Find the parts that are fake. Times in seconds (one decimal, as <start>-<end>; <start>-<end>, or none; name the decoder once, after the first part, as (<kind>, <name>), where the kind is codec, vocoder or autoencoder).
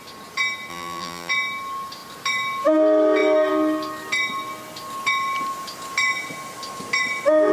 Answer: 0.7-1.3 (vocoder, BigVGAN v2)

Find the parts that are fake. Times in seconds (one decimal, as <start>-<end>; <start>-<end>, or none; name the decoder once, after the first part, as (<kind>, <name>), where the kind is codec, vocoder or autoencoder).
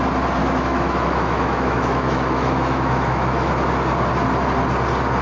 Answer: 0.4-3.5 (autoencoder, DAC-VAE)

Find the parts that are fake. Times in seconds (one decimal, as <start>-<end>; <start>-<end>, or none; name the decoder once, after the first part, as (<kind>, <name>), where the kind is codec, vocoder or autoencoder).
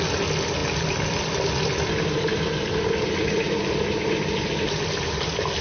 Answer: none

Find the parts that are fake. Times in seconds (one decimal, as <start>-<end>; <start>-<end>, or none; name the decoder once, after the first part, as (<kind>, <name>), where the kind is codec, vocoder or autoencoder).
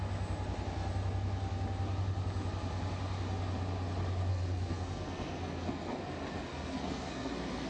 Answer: 4.3-6.0 (codec, SNAC); 6.5-7.7